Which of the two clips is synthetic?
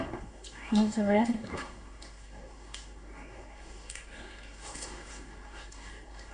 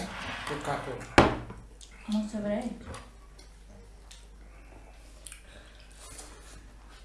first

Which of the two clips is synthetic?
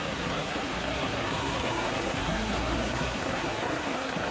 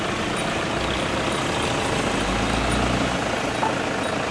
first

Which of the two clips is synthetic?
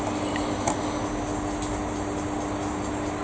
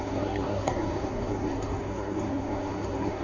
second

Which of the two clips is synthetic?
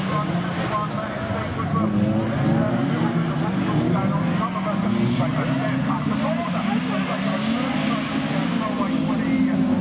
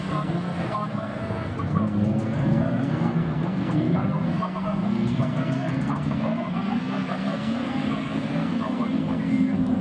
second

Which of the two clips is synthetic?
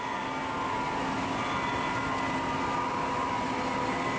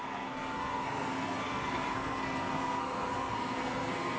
second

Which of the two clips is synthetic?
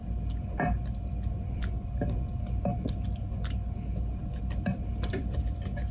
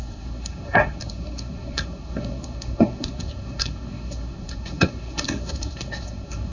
second